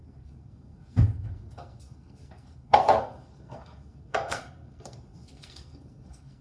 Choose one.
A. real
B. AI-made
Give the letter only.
B